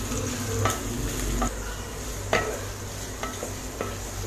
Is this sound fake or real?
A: real